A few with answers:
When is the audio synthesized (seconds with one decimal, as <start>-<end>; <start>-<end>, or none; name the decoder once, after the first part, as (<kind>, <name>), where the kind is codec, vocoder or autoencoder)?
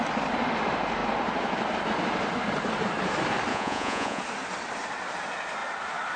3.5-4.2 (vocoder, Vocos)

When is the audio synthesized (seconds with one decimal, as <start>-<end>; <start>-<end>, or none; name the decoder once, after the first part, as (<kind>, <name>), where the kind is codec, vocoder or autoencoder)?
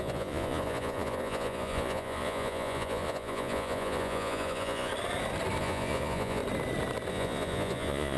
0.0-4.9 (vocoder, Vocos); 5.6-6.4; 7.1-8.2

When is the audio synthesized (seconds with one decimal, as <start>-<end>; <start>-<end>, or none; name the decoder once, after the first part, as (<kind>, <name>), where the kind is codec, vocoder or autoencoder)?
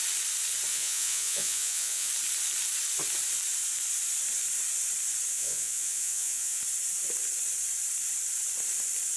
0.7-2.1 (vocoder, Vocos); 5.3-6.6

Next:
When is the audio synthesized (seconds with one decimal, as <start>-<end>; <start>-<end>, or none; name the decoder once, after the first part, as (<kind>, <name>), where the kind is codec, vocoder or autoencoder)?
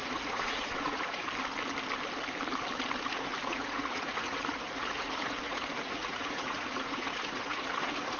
0.0-1.2 (vocoder, Vocos); 3.1-8.2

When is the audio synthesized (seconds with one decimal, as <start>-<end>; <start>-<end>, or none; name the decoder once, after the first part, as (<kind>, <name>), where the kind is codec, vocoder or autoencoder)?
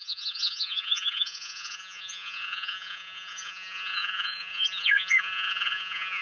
0.0-6.2 (vocoder, Vocos)